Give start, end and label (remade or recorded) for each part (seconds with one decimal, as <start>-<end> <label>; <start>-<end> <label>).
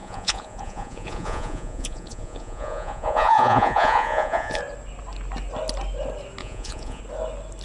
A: 0.0-4.6 remade; 4.6-6.4 recorded; 6.4-7.0 remade; 7.0-7.6 recorded